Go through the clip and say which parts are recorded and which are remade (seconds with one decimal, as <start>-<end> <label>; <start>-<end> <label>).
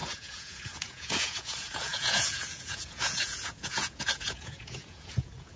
0.0-5.6 remade